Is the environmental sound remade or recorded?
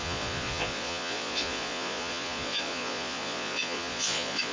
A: remade